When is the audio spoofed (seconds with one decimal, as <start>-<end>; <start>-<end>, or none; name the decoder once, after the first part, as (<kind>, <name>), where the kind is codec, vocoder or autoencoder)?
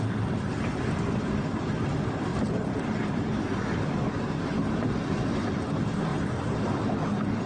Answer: 2.3-3.1 (vocoder, BigVGAN v2); 6.1-6.8